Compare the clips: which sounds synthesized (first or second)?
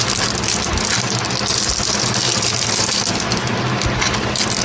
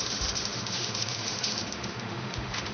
second